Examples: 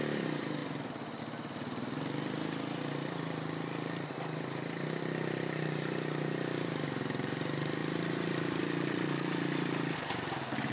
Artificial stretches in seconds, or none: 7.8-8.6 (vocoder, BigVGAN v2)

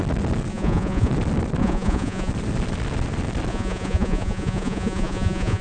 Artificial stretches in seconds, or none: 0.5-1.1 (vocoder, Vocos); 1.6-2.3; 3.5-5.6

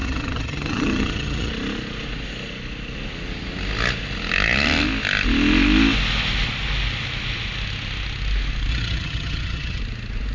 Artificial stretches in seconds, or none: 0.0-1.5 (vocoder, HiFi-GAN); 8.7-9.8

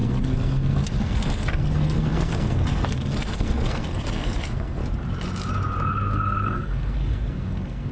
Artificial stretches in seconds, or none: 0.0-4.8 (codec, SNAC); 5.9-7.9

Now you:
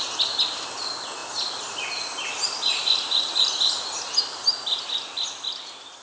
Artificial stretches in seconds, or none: none

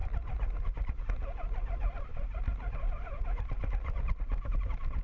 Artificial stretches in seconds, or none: none